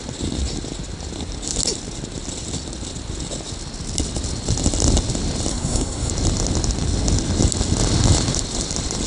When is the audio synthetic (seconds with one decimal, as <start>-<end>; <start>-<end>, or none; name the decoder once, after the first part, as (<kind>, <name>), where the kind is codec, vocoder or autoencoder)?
5.5-6.1 (codec, SNAC)